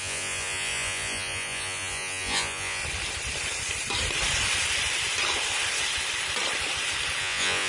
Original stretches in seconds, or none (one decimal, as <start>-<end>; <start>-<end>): 2.8-7.2